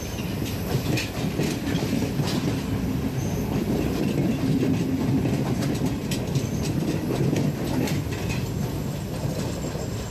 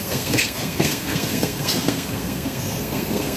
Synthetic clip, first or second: second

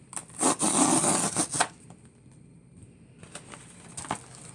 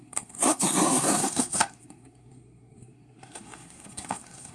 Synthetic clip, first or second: second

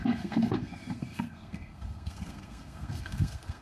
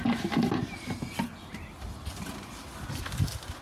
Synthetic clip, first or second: first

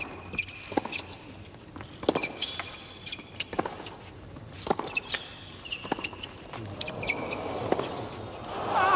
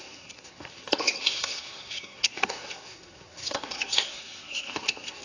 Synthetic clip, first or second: second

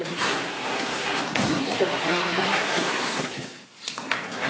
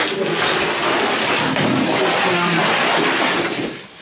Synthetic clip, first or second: first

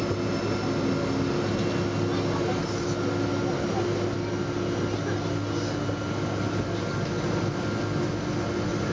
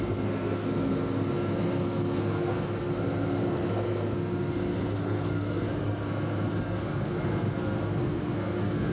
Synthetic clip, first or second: second